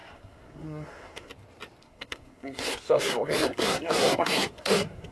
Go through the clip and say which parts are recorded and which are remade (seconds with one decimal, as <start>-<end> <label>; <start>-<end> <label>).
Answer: 0.0-1.3 remade; 1.3-1.8 recorded; 1.8-5.1 remade